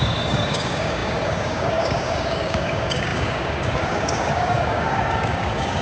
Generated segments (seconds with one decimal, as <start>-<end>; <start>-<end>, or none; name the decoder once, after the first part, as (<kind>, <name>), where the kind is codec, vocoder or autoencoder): 0.0-5.8 (codec, DAC)